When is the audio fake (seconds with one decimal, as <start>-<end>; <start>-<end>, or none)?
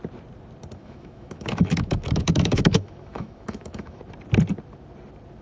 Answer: 0.8-4.0